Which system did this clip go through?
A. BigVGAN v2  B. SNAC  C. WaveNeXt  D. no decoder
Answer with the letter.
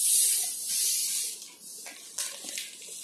D